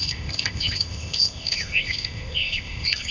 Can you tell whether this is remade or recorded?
remade